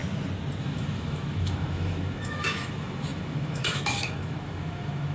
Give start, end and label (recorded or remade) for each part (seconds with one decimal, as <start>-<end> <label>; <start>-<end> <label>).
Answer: 0.0-0.6 recorded; 0.6-5.1 remade